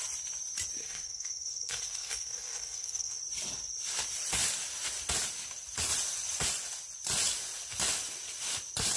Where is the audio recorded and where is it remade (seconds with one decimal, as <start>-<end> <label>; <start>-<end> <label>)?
0.0-0.8 recorded; 0.8-3.2 remade; 3.2-9.0 recorded